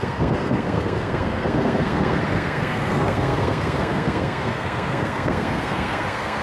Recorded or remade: remade